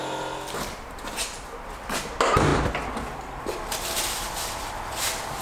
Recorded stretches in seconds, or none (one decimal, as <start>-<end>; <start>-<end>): 0.0-5.4